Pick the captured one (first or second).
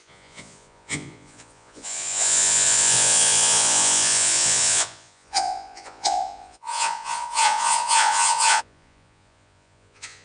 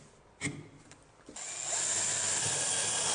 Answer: second